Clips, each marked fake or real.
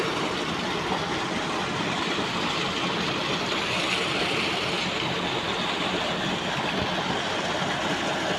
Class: real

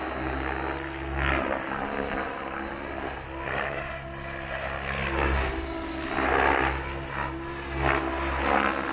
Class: real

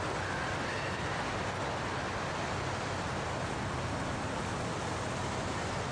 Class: real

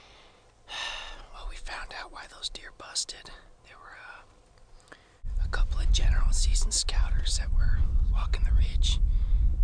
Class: real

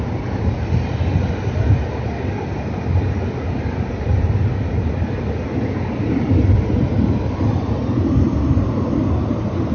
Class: real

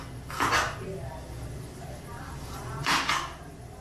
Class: real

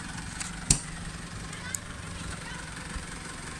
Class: fake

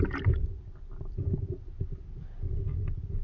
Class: real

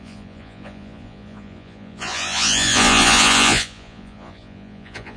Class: fake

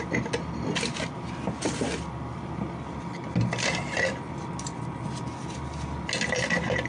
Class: real